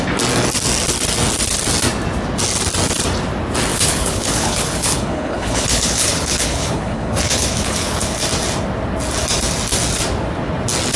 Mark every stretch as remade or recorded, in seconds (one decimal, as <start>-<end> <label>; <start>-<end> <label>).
0.0-3.7 recorded; 3.7-8.2 remade; 8.2-11.0 recorded